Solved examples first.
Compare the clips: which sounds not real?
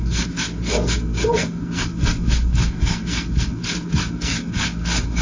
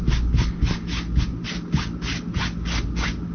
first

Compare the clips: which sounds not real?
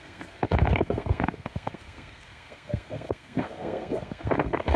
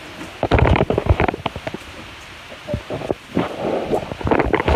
first